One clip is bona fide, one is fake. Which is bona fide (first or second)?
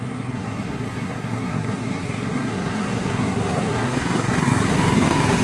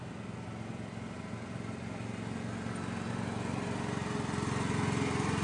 second